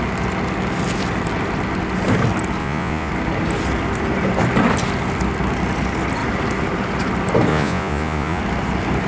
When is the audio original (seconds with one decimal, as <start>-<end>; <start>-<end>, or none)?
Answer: 0.0-2.6; 3.1-7.5; 8.4-9.1